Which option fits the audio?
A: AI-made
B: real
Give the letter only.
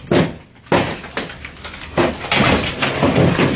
B